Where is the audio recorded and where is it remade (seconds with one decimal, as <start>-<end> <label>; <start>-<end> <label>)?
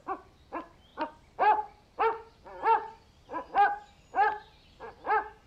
0.0-5.5 recorded